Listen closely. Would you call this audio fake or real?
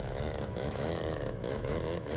fake